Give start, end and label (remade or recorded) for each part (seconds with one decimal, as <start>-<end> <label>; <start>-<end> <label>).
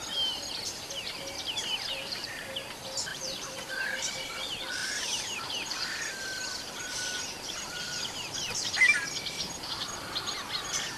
0.0-3.1 recorded; 3.1-3.7 remade; 3.7-4.8 recorded; 4.8-5.7 remade; 5.7-11.0 recorded